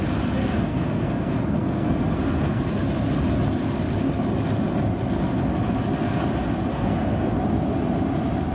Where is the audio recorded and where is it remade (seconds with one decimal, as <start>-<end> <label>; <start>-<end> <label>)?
0.0-0.4 recorded; 0.4-2.7 remade; 2.7-6.7 recorded; 6.7-7.3 remade; 7.3-8.5 recorded